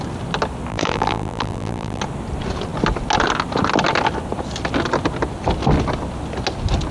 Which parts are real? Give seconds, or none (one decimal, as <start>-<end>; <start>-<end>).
0.0-0.7; 2.0-6.9